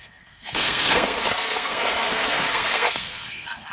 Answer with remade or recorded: remade